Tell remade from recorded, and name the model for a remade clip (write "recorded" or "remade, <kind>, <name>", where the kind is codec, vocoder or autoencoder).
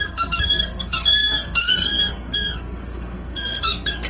remade, codec, SNAC